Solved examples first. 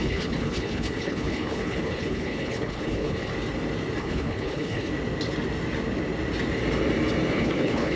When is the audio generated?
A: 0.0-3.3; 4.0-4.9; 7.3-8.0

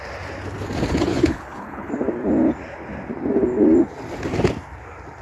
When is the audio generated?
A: 1.1-1.9

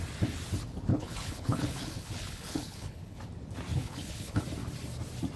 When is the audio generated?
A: 0.9-3.2; 3.7-4.4

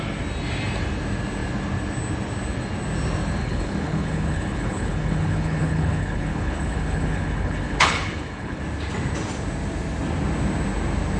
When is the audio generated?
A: 3.4-8.6

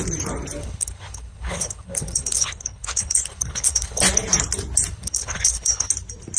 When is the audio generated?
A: 0.6-4.0; 4.9-5.9

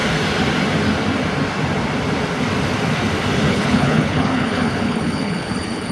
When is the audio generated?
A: 3.5-5.9